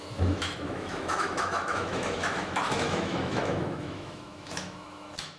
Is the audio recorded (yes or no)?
no